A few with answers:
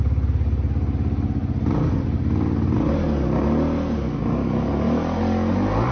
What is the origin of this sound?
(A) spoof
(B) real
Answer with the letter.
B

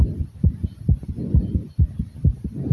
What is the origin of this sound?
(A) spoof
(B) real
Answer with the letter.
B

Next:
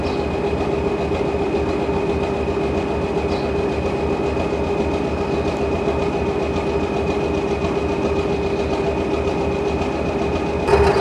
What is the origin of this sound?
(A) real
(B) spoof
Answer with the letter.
A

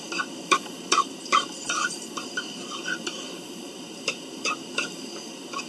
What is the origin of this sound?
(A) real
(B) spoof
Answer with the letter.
B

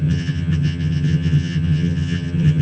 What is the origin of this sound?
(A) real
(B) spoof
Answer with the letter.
B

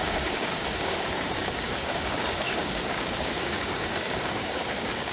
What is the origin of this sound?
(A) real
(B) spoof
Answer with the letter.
B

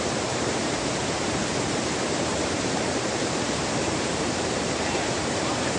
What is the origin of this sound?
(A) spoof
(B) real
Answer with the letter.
A